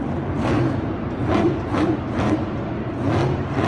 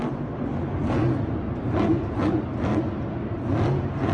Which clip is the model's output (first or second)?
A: first